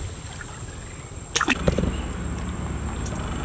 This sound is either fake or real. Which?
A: real